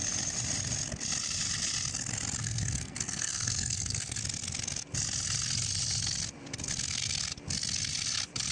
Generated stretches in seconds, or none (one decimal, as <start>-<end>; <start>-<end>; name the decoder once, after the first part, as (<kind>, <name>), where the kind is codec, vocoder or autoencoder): 2.4-4.2 (codec, SNAC)